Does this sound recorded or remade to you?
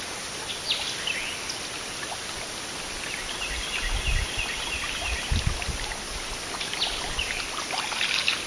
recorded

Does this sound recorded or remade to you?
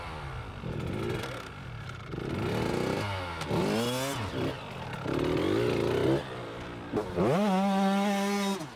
recorded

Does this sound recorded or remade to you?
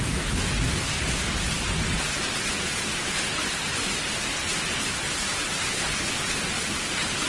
recorded